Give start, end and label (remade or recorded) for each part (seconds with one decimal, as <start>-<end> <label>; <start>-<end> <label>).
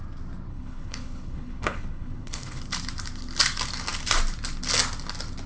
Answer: 0.0-0.5 recorded; 0.5-2.6 remade; 2.6-5.5 recorded